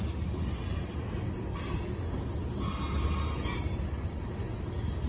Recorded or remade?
recorded